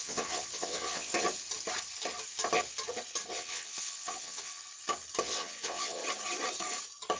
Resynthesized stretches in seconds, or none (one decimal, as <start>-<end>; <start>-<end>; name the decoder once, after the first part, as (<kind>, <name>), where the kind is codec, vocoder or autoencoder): 0.0-1.1 (vocoder, WaveNeXt); 3.3-4.6; 5.2-6.0